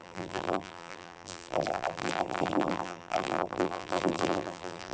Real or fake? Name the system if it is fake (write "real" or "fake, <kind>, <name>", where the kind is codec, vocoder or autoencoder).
fake, vocoder, BigVGAN v2